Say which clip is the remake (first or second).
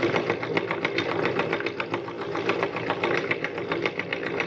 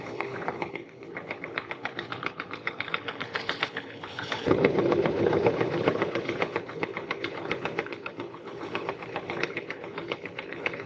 second